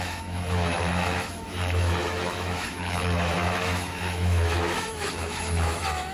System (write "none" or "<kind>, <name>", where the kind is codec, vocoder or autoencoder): autoencoder, DAC-VAE